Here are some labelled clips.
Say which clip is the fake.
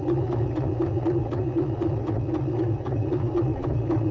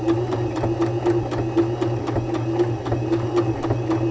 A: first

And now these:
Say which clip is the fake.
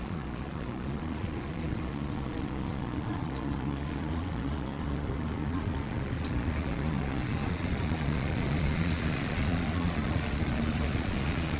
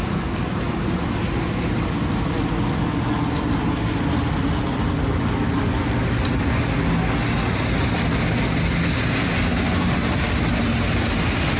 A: first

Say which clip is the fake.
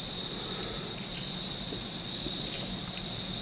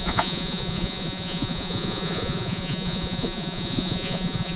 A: second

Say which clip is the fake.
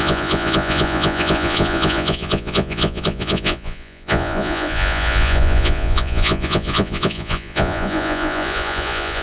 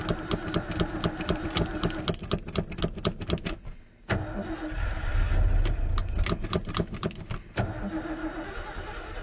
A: first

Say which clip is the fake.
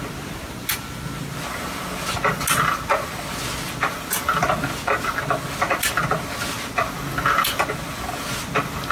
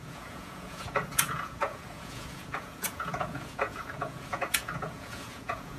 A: second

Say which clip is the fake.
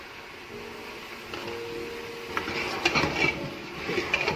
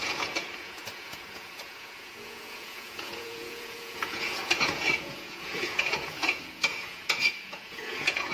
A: second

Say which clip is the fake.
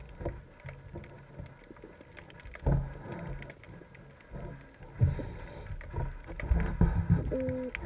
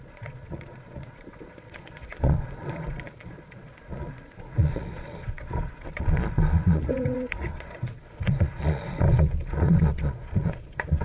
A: second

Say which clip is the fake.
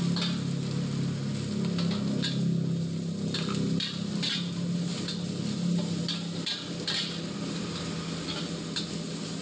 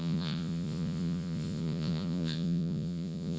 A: second